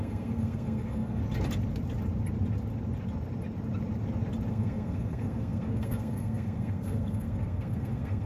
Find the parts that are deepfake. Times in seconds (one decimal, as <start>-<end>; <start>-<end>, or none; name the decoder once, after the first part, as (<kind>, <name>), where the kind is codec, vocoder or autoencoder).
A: 0.0-1.2 (codec, SNAC); 4.5-8.3